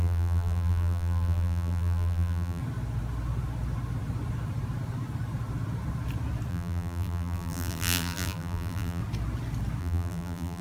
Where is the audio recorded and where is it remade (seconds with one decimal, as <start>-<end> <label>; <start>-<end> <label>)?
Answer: 0.0-2.6 remade; 2.6-6.5 recorded; 6.5-9.0 remade; 9.0-9.8 recorded; 9.8-10.6 remade